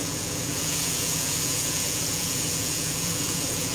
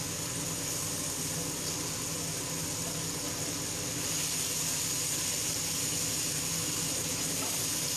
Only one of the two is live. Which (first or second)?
second